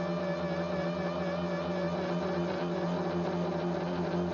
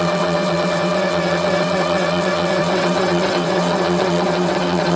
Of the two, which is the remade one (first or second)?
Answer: second